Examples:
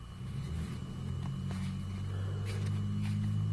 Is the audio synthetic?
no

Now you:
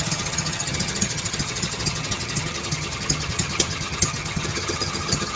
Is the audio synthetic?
yes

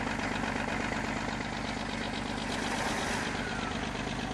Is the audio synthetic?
no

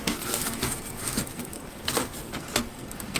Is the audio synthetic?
yes